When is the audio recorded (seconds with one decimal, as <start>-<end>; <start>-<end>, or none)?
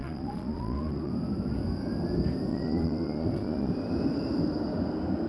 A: 1.1-2.5; 3.7-5.3